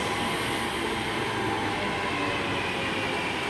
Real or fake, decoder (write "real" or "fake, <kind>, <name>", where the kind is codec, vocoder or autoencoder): real